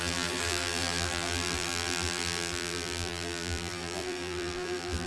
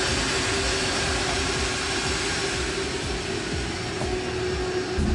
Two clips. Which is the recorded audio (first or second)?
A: second